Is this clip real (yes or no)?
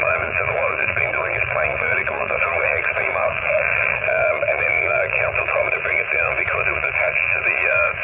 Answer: no